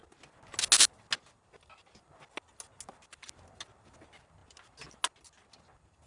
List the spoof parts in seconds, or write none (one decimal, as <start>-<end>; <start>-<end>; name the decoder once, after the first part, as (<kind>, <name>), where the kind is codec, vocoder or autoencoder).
none